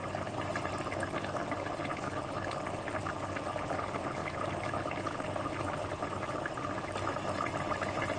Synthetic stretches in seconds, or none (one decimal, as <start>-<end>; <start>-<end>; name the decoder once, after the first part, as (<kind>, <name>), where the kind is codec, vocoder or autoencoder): none